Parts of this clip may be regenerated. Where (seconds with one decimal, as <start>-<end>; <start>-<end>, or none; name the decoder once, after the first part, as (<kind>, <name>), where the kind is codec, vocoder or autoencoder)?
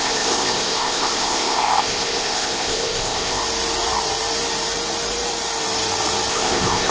0.0-3.4 (codec, ZipCodec); 6.3-6.9